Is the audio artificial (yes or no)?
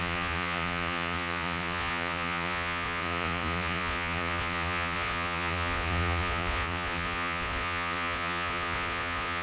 yes